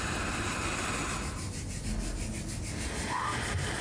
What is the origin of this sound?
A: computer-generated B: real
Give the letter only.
B